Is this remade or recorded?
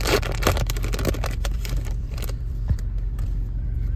remade